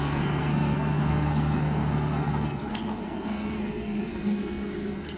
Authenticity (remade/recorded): remade